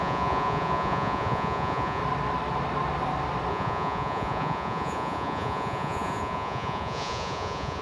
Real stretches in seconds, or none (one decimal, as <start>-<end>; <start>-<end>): 2.0-3.5